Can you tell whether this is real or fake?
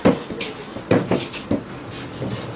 real